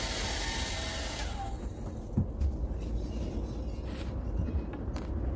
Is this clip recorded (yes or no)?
yes